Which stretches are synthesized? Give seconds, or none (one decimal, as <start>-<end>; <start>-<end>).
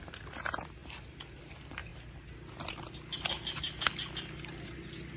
none